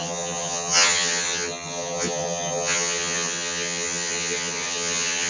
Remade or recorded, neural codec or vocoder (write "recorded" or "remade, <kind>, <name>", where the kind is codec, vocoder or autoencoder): remade, vocoder, HiFi-GAN